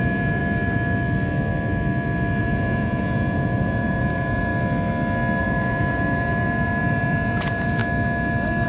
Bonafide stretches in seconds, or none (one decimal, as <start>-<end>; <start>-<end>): 0.4-2.4; 4.5-5.4; 7.8-8.7